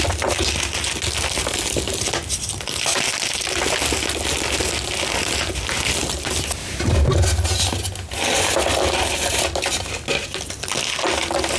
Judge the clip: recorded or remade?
recorded